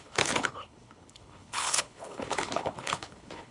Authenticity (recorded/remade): remade